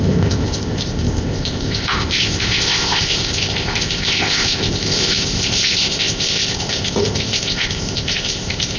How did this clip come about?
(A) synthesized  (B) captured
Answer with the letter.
A